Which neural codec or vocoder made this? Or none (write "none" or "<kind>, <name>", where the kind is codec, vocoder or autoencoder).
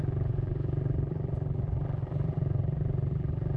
vocoder, BigVGAN v2